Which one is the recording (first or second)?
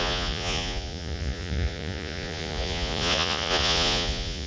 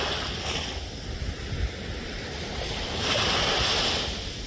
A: second